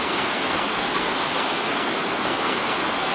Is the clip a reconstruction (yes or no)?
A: yes